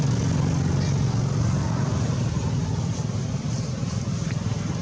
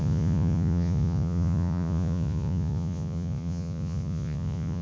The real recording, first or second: first